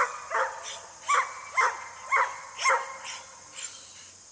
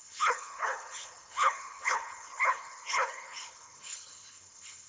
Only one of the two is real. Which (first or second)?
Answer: first